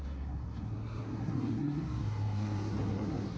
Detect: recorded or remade remade